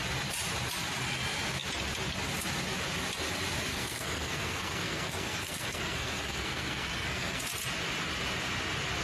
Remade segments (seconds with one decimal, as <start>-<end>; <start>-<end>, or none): 3.7-7.4